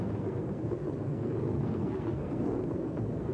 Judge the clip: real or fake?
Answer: fake